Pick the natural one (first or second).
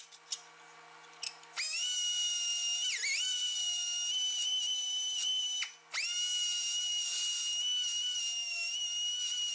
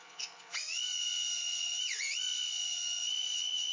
first